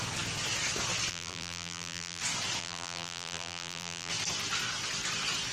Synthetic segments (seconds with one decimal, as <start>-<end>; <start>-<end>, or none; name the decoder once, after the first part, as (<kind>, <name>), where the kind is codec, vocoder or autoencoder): 1.1-2.2 (vocoder, BigVGAN v2); 2.6-4.1